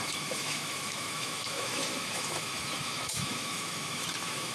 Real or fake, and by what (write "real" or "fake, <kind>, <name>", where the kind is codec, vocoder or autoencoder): fake, autoencoder, DAC-VAE